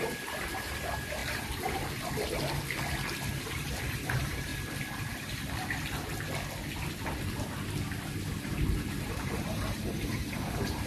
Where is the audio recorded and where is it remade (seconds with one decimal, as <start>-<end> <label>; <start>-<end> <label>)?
0.0-1.2 remade; 1.2-3.5 recorded; 3.5-4.5 remade; 4.5-8.9 recorded; 8.9-10.9 remade